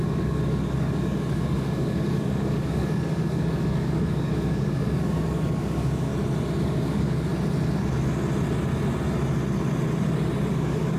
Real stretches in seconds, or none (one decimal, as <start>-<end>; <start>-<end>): 6.1-6.6; 7.3-10.5